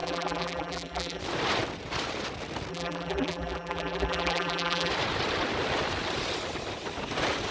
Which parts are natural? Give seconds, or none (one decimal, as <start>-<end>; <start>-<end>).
1.2-2.7; 4.9-7.5